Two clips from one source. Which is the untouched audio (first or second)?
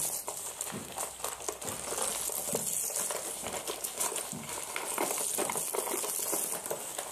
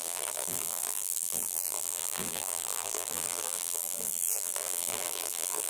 first